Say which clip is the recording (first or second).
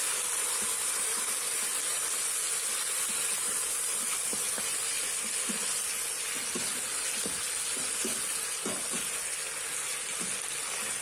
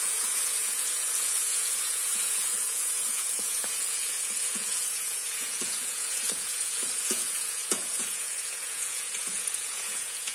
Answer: first